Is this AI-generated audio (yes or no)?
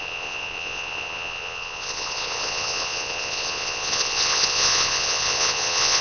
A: yes